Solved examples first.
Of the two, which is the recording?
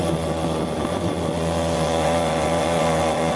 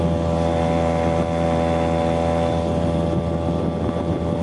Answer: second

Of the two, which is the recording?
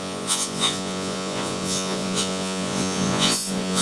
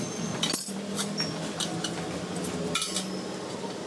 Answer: second